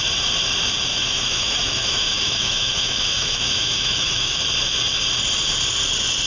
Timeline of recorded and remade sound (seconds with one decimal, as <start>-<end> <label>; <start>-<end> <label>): 0.0-0.9 recorded; 0.9-4.4 remade; 4.4-6.3 recorded